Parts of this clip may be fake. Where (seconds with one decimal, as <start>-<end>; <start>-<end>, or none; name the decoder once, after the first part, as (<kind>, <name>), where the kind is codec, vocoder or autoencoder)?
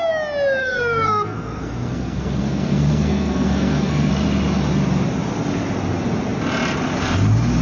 0.6-4.1 (codec, SNAC)